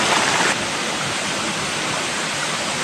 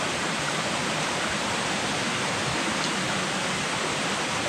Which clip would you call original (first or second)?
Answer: first